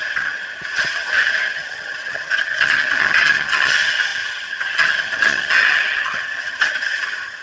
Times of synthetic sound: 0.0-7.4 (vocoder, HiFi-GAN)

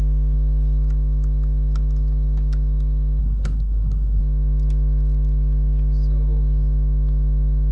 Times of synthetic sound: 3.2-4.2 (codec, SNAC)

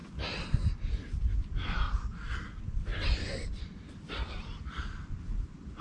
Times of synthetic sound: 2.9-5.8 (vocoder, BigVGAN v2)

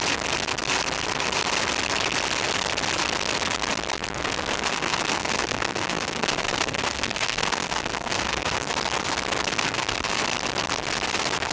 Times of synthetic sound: 4.7-8.7 (codec, SNAC); 9.5-10.2

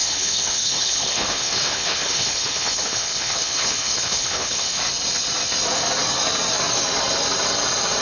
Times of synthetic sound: 0.0-4.8 (codec, HILCodec)

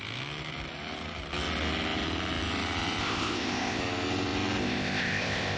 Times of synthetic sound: 3.0-3.8 (codec, ZipCodec); 4.6-5.6

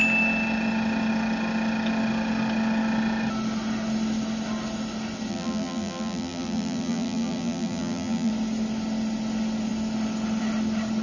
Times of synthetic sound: 5.3-8.3 (vocoder, BigVGAN v2)

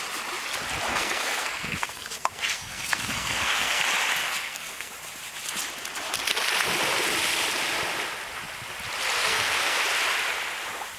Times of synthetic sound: 0.9-3.8 (codec, SNAC); 4.2-4.9; 9.2-9.8